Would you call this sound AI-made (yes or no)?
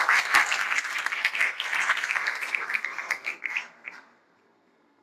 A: yes